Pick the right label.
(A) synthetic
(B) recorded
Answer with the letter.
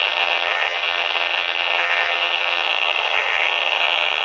A